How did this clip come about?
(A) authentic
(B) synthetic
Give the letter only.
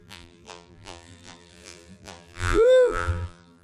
B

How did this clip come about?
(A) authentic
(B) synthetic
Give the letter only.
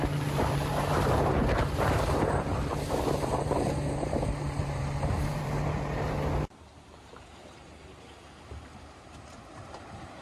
B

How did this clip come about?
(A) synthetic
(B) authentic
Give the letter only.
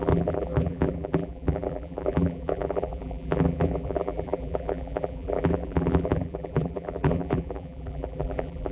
A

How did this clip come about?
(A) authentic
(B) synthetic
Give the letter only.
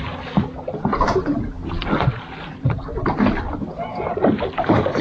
A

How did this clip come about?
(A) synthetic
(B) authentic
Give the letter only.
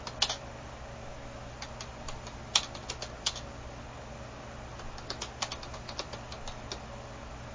B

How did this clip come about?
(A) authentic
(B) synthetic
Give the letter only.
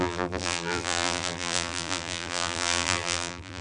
B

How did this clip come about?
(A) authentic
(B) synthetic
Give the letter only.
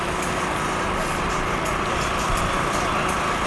B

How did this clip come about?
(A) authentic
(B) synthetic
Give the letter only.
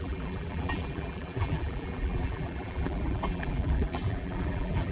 B